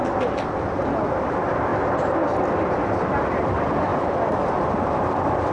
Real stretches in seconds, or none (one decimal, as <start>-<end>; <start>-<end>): 0.0-5.5